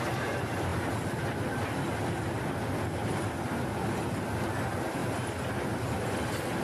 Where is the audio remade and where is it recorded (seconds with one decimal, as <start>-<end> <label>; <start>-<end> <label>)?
0.0-6.6 recorded